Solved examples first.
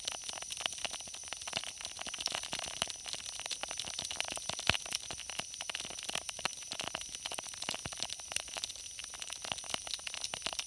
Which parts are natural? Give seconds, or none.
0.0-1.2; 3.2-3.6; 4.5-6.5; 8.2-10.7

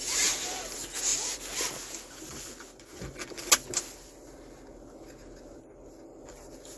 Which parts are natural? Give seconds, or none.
0.0-6.8

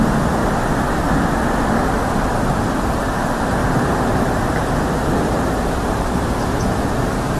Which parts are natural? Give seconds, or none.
0.4-2.4

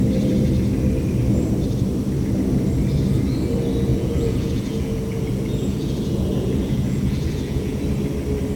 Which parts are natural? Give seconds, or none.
0.0-3.9; 7.8-8.6

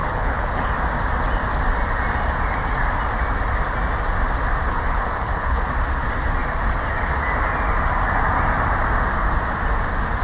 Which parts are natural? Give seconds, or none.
0.7-4.7; 5.6-10.2